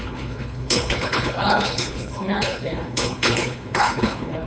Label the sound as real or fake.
fake